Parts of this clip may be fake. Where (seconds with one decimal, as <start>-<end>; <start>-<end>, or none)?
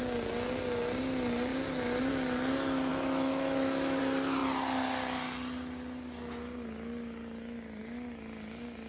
2.9-4.0